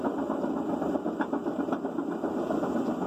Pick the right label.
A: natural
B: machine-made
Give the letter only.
A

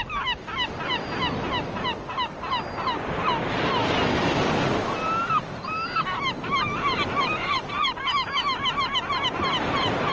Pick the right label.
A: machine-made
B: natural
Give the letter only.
B